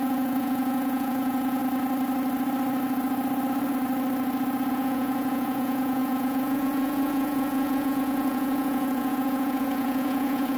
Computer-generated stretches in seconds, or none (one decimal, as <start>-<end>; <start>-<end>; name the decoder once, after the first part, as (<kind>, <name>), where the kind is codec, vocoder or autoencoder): 0.0-1.6 (vocoder, Vocos); 4.7-10.6